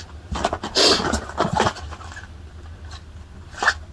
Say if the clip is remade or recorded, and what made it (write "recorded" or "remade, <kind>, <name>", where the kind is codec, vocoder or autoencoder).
recorded